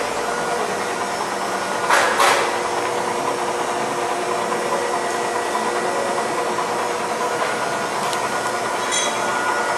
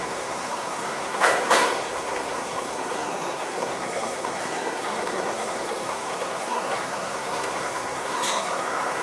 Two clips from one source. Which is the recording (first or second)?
first